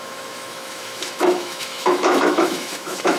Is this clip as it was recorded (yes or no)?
no